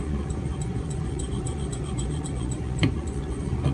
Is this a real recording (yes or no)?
no